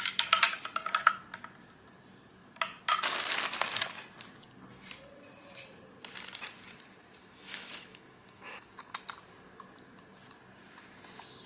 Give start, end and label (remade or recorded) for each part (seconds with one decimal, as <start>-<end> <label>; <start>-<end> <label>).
0.0-7.2 recorded; 7.2-8.7 remade; 8.7-11.5 recorded